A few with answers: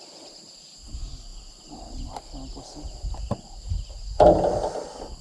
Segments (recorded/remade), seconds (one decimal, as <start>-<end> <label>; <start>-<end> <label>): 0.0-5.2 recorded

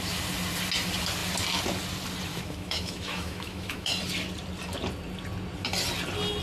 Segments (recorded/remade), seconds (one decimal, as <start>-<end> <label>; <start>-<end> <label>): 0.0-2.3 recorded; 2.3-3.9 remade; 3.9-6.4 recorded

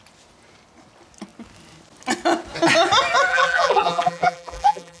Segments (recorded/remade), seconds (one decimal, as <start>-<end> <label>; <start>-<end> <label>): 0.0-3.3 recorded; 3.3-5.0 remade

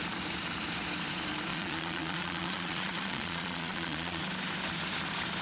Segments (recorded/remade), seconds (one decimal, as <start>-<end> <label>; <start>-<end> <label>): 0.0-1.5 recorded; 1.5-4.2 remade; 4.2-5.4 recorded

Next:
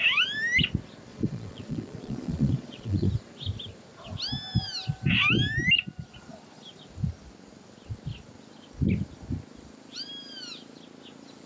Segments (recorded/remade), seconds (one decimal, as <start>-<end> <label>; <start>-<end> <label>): 0.0-1.1 recorded; 1.1-3.1 remade; 3.1-11.5 recorded

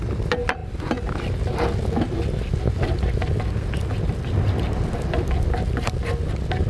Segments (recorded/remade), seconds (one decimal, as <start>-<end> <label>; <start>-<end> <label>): 0.0-6.7 recorded

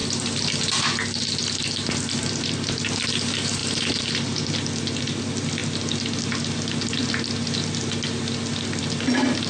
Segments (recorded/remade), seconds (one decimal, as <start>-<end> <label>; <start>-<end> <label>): 0.0-9.5 recorded